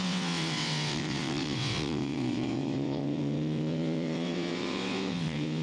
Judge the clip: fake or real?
fake